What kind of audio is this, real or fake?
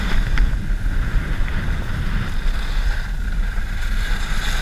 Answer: real